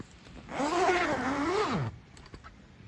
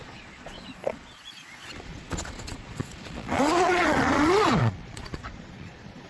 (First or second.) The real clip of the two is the first